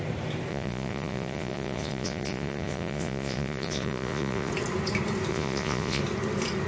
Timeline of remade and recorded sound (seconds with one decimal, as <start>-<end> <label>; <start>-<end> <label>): 0.0-0.5 recorded; 0.5-4.5 remade; 4.5-5.3 recorded; 5.3-6.0 remade; 6.0-6.7 recorded